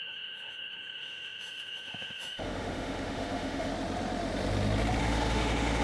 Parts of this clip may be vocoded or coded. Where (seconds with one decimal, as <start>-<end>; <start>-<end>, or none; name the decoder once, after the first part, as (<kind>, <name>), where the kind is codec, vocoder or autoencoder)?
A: 0.0-3.7 (autoencoder, DAC-VAE); 5.0-5.8